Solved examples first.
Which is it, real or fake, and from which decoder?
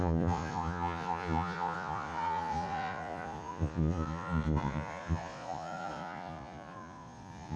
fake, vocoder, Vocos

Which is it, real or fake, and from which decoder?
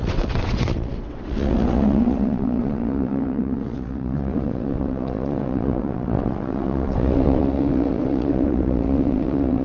fake, vocoder, WaveNeXt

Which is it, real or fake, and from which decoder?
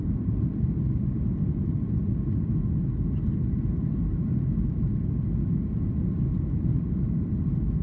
real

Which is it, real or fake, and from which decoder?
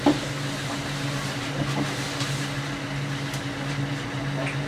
real